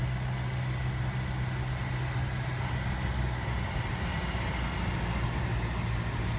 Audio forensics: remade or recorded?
recorded